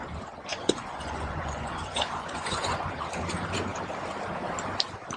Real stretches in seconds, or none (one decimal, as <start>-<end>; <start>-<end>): 0.0-0.5; 2.9-5.2